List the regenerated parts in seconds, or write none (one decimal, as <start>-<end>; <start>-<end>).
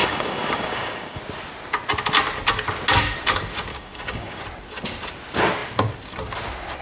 0.0-1.2; 3.7-4.4